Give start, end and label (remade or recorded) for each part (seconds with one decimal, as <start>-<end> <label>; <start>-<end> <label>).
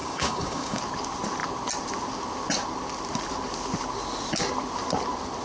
0.0-0.8 remade; 0.8-5.4 recorded